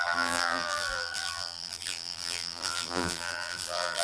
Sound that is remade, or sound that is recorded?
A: remade